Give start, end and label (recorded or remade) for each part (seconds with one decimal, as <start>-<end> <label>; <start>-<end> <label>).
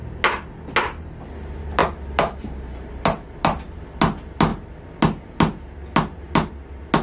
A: 0.0-7.0 recorded